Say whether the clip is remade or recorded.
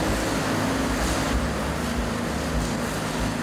recorded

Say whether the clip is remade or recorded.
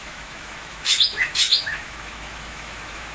remade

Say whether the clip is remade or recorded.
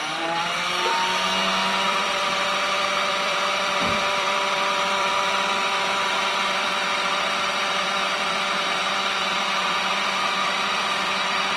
remade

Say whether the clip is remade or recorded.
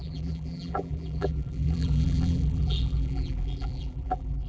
remade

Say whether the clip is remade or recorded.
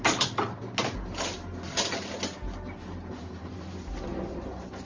recorded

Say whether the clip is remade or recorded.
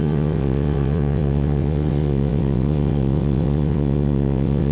remade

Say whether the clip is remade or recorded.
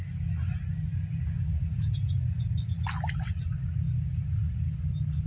recorded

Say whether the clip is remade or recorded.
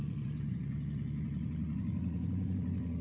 remade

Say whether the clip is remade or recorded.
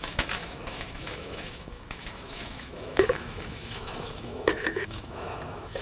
remade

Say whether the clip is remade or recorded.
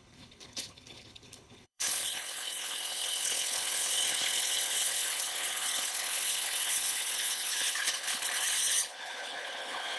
remade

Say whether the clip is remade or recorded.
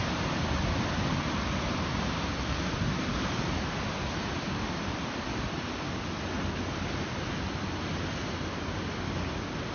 recorded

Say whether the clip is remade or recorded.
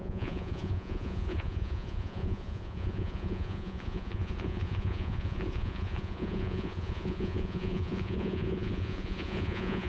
remade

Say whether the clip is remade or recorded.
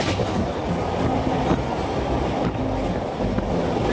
recorded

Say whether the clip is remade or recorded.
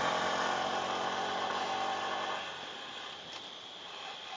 recorded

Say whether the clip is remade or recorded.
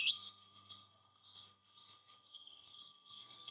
remade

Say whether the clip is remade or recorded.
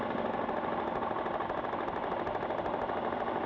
recorded